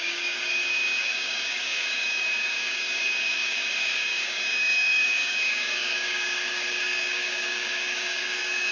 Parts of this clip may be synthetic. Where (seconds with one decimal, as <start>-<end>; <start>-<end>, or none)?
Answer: 0.0-8.7